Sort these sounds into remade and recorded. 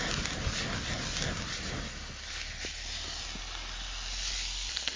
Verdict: recorded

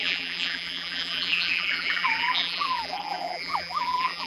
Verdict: remade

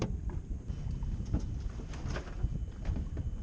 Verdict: recorded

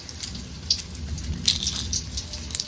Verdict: recorded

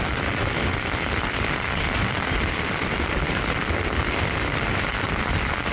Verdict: recorded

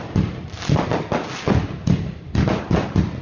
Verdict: recorded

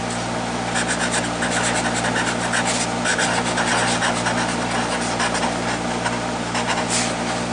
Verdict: recorded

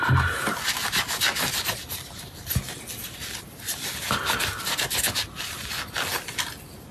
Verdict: recorded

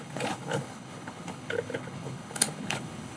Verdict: remade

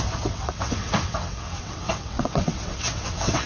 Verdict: remade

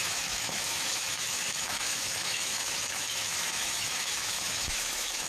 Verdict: remade